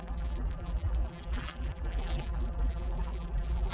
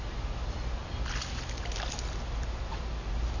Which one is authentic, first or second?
second